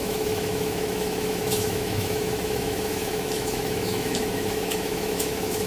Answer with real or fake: fake